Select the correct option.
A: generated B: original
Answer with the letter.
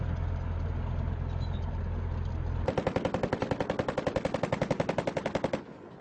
B